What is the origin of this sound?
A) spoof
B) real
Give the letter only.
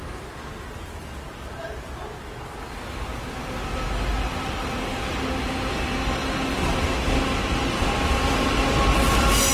B